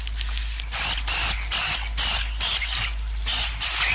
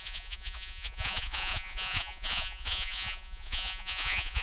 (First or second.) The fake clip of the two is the second